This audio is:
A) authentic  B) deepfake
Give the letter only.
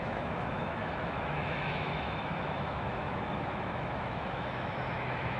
B